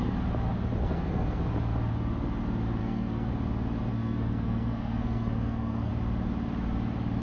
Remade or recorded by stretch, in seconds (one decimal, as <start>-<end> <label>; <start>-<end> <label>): 0.0-0.8 recorded; 0.8-1.4 remade; 1.4-2.8 recorded; 2.8-3.3 remade; 3.3-3.9 recorded; 3.9-5.9 remade; 5.9-7.2 recorded